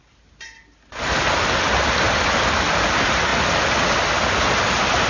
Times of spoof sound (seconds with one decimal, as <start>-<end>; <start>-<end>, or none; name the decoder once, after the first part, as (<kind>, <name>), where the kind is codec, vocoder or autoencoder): none